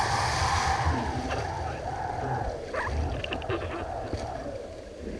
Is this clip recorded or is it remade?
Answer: recorded